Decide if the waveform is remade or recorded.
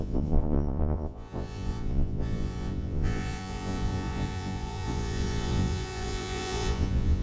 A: remade